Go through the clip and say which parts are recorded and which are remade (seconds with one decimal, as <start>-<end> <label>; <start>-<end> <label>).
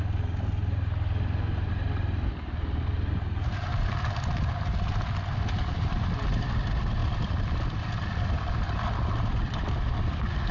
0.0-10.5 recorded